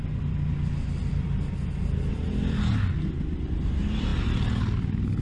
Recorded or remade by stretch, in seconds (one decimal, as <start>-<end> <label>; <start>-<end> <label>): 0.0-5.2 recorded